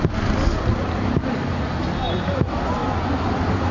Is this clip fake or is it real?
real